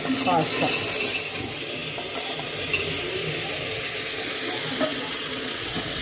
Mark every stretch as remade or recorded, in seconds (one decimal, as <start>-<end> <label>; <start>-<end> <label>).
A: 0.0-4.9 recorded; 4.9-6.0 remade